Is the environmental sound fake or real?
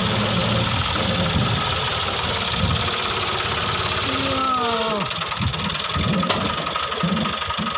real